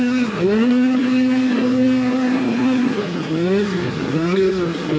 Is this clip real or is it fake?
fake